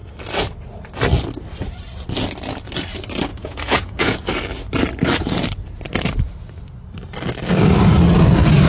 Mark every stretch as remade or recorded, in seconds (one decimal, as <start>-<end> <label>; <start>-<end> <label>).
0.0-3.3 recorded; 3.3-4.2 remade; 4.2-8.7 recorded